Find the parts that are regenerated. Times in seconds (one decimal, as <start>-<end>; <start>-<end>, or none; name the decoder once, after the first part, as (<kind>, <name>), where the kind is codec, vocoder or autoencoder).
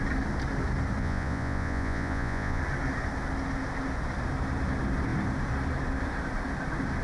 1.0-2.6 (vocoder, Vocos)